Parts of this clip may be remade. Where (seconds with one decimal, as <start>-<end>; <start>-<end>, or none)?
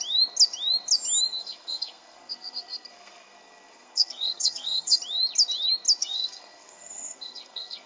1.4-5.0; 6.0-7.9